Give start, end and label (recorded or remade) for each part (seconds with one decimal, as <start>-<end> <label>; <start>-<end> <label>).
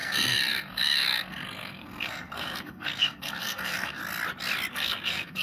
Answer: 0.0-4.0 remade; 4.0-4.7 recorded; 4.7-5.4 remade